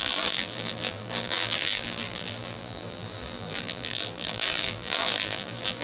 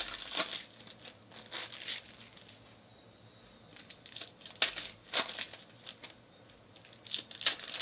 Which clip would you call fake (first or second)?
first